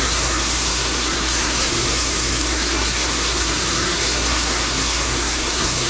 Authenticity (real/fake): fake